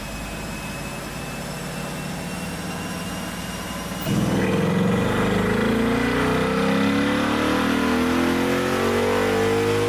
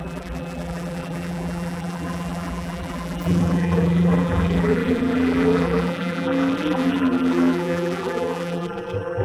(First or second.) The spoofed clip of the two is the second